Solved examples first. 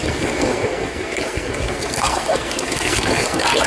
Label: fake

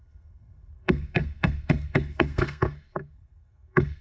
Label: fake